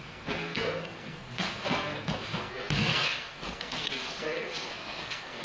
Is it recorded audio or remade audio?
remade